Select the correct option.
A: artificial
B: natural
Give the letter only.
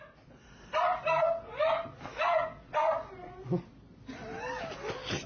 B